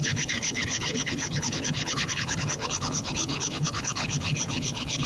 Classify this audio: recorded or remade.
remade